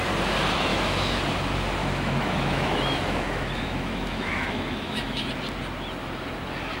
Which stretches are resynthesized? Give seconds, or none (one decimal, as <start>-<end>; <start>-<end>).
0.7-1.2; 1.8-5.3